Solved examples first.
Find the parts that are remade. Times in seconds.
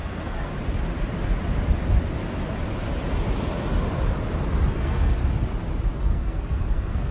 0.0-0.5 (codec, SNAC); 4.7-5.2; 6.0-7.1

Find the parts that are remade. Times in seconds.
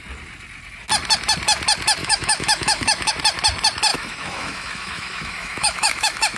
2.0-3.1 (autoencoder, DAC-VAE); 3.9-6.4